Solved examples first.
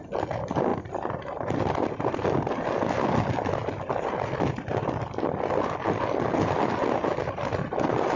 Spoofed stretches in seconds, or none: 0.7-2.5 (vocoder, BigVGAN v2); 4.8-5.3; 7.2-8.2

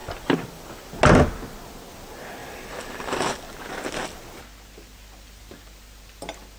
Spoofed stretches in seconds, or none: 0.0-1.0 (vocoder, BigVGAN v2); 2.4-3.3

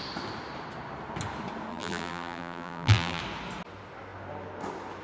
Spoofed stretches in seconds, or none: 1.7-3.2 (vocoder, BigVGAN v2)

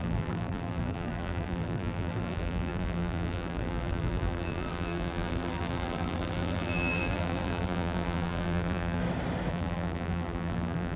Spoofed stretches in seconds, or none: 0.0-9.0 (vocoder, BigVGAN v2); 9.5-11.0